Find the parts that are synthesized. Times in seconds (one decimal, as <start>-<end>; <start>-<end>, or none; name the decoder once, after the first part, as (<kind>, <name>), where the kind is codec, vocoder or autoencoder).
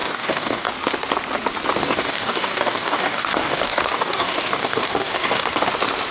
0.0-0.7 (codec, DAC); 1.8-5.5